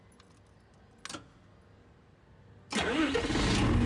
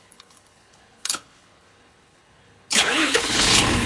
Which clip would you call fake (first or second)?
second